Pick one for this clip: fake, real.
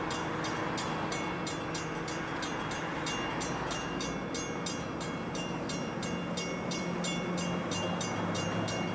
real